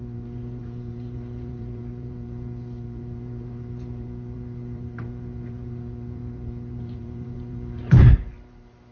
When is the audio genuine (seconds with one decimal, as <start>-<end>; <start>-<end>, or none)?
none